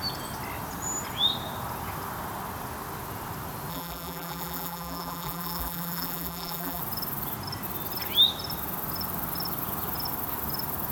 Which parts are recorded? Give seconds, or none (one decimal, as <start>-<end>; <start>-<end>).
0.0-3.7; 6.8-10.9